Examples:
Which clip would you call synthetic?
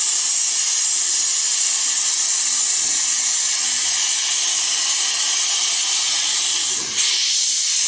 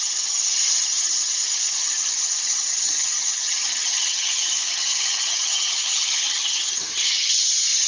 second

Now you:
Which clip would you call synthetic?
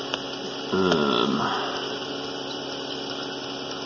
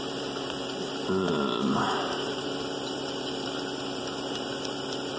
second